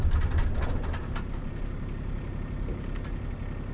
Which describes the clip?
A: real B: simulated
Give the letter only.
A